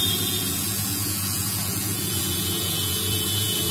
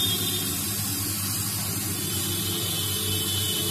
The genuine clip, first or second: second